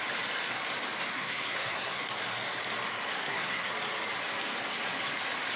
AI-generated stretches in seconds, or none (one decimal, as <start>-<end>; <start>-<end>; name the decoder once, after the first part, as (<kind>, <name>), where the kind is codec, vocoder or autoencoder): 1.1-2.1 (codec, SNAC); 3.1-3.7